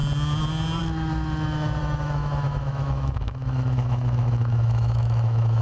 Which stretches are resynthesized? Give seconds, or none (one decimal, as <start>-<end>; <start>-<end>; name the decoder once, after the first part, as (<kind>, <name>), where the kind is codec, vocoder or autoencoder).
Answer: 1.8-5.6 (autoencoder, DAC-VAE)